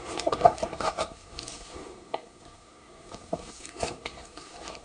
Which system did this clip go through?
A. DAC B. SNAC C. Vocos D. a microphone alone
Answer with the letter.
B